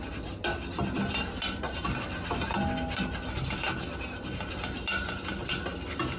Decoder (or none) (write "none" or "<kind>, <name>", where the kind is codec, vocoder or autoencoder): none